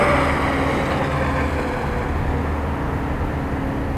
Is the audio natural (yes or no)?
yes